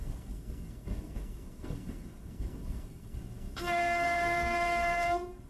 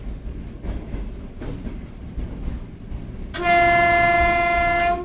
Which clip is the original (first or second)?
second